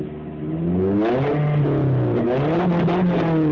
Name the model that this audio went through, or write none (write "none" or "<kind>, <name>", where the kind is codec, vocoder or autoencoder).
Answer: none